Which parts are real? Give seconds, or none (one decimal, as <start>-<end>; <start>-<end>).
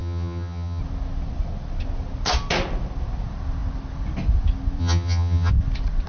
0.8-4.8; 5.5-6.1